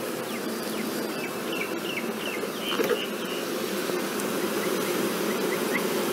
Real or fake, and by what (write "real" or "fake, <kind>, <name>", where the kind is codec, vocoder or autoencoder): real